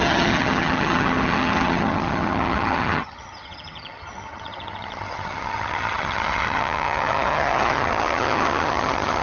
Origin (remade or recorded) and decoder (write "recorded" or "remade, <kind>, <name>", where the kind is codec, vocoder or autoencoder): remade, vocoder, HiFi-GAN